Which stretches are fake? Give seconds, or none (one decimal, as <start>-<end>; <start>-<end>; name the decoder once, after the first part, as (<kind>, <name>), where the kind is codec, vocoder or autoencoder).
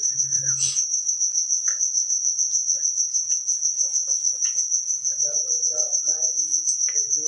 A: 0.0-1.2 (autoencoder, DAC-VAE)